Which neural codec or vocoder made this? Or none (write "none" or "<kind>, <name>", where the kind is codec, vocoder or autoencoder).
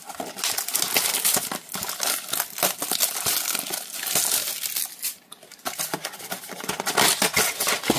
none